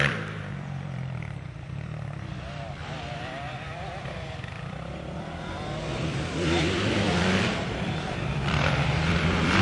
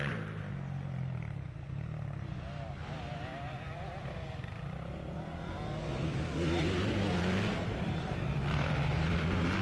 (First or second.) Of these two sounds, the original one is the second